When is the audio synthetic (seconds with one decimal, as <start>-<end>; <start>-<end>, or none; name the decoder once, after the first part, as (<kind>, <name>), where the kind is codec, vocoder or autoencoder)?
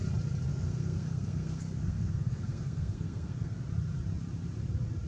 0.5-3.6 (codec, SNAC)